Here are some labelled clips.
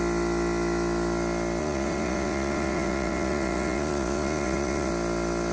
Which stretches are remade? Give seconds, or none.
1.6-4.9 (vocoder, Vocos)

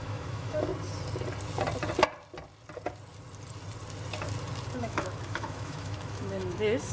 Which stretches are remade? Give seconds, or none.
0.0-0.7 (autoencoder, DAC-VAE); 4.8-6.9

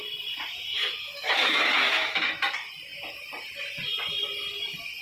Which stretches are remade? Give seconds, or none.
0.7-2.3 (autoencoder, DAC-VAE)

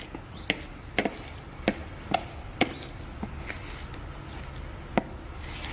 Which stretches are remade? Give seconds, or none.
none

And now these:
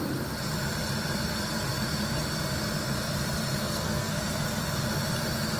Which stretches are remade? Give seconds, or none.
3.6-4.2 (codec, SNAC)